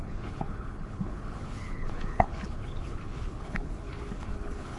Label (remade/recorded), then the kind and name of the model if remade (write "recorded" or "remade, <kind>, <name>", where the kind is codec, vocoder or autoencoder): remade, codec, HILCodec